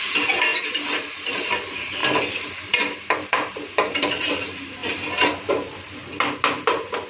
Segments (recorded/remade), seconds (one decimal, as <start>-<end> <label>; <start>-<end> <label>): 0.0-6.0 remade; 6.0-7.1 recorded